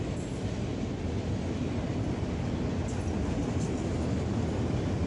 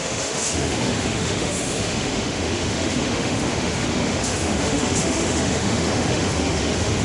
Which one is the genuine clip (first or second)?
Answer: first